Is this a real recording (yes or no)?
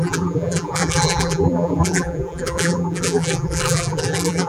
no